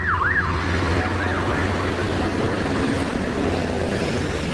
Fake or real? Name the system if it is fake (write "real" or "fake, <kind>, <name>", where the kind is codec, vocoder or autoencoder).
real